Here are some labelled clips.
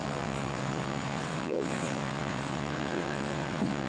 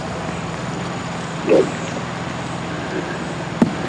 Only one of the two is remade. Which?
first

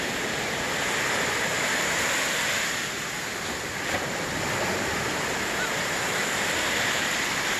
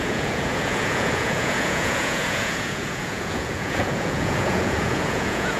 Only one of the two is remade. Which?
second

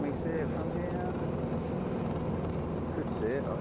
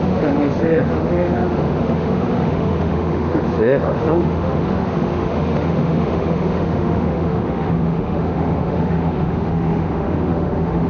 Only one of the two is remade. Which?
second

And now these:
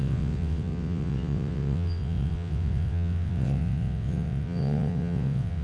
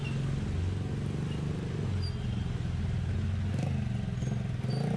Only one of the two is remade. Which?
first